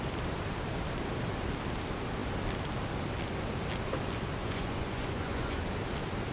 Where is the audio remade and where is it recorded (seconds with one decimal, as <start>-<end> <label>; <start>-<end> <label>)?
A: 0.0-4.4 recorded; 4.4-5.6 remade; 5.6-6.3 recorded